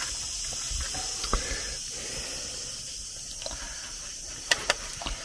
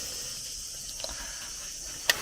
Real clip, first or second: second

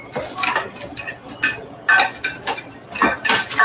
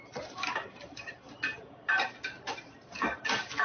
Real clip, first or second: first